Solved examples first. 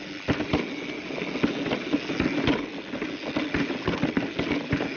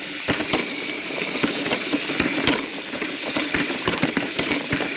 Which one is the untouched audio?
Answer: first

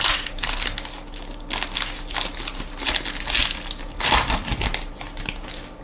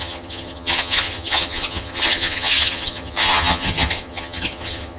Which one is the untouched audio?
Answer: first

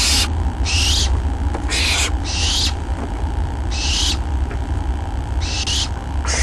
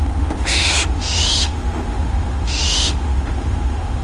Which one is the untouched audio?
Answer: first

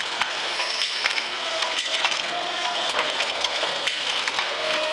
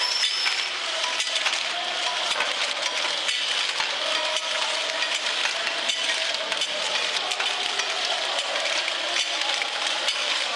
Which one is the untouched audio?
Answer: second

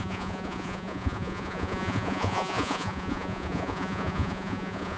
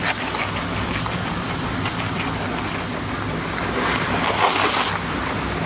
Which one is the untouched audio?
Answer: second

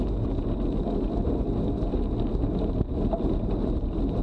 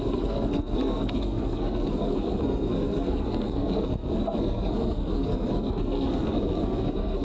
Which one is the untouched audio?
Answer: first